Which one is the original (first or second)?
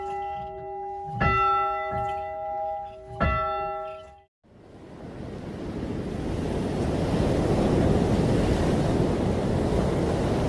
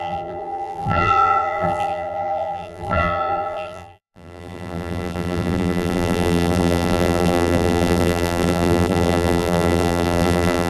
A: first